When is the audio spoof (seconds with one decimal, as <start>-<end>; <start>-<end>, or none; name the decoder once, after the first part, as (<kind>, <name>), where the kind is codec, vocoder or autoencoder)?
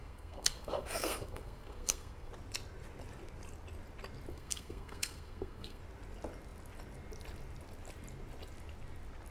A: 0.0-2.3 (codec, SNAC); 4.3-5.8